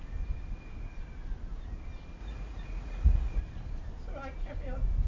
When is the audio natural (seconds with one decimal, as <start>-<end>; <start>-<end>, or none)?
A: 0.0-2.2; 3.4-5.1